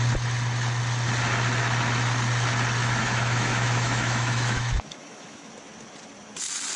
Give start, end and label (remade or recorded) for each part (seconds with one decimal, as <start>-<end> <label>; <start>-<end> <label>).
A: 0.0-2.8 recorded; 2.8-5.5 remade; 5.5-6.8 recorded